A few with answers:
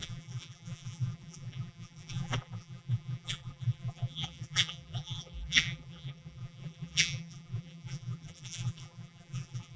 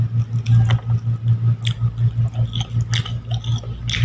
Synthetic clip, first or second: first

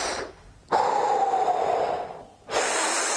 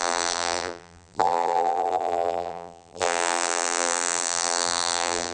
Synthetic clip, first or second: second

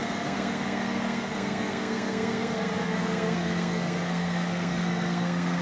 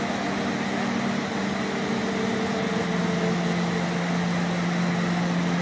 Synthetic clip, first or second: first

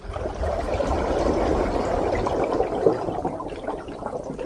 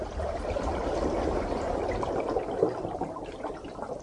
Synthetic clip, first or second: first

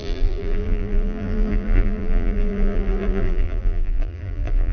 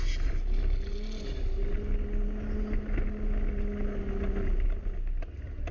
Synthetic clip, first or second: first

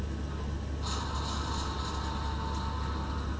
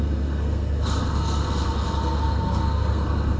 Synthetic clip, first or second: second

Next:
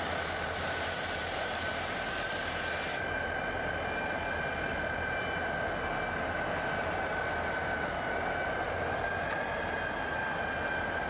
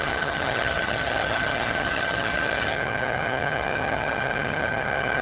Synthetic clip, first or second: second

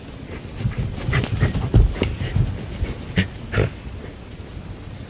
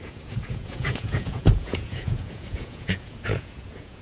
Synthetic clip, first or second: second